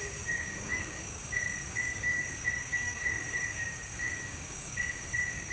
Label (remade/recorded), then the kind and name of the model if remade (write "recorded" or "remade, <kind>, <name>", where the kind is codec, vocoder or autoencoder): remade, codec, DAC